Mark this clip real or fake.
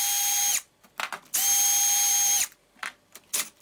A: real